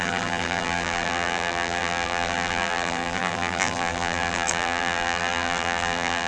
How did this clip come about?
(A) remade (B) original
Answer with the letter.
A